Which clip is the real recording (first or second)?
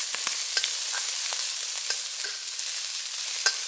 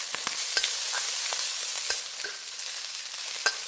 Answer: first